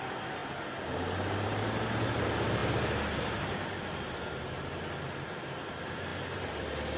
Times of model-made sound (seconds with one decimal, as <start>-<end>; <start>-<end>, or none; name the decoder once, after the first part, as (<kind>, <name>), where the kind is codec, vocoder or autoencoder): none